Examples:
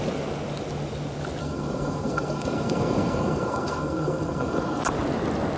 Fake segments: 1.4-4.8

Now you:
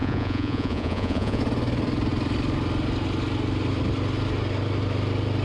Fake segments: 0.0-1.4

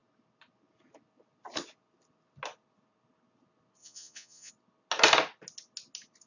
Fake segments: 3.8-4.5

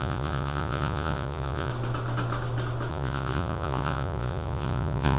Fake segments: 0.0-1.7; 2.9-5.2

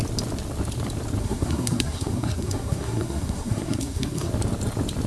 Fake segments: 1.2-4.3

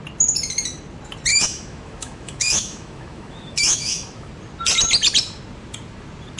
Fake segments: 1.3-4.3

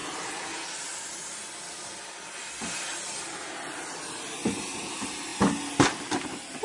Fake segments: none

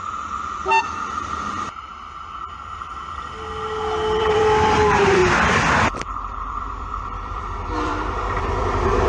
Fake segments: 0.0-1.9; 4.2-5.2; 5.9-9.1